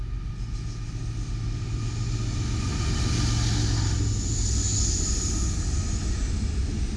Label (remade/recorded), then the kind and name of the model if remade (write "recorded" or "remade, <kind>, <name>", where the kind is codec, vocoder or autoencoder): recorded